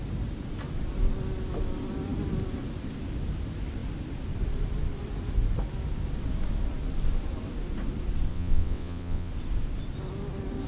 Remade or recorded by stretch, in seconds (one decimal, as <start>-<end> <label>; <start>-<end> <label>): 0.0-8.3 recorded; 8.3-9.3 remade; 9.3-10.7 recorded